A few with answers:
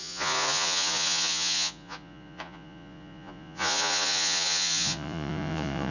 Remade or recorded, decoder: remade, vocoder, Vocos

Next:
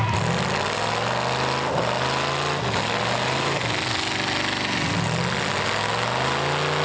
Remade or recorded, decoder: recorded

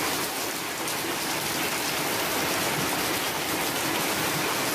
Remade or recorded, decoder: recorded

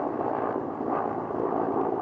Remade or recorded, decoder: recorded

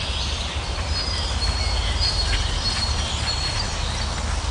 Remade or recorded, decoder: recorded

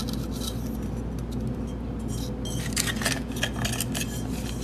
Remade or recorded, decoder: recorded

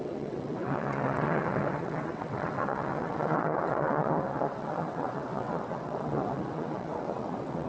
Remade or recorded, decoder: remade, vocoder, WaveNeXt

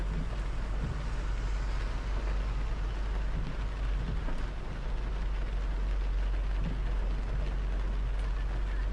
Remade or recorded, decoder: recorded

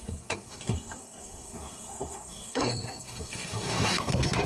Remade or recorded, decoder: remade, codec, SNAC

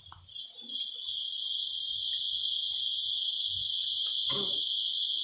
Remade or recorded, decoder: recorded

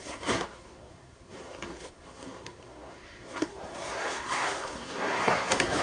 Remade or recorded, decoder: remade, codec, SNAC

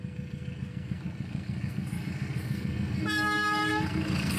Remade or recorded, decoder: remade, codec, SNAC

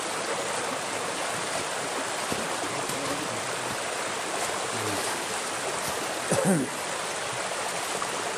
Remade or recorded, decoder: recorded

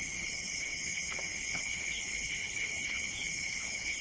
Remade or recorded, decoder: remade, codec, HILCodec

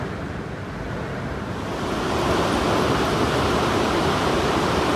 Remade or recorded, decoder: recorded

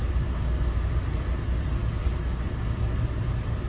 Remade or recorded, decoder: recorded